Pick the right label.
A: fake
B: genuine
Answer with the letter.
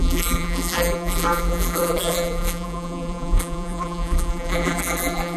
A